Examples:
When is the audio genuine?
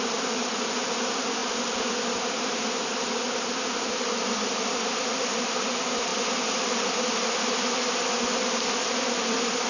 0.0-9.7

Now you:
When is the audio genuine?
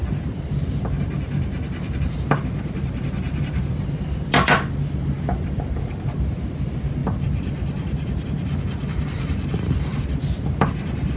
0.0-11.2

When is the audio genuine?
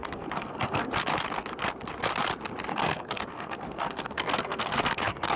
0.9-2.7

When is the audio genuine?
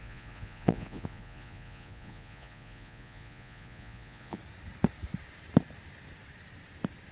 4.4-7.1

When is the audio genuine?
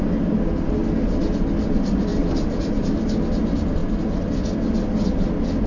0.0-5.7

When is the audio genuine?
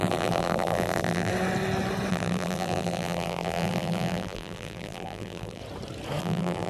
1.3-2.1; 5.6-6.2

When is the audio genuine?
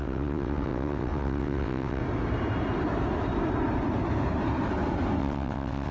2.0-5.2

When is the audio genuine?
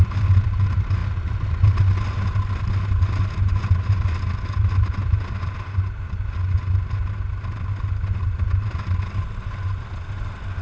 0.0-10.6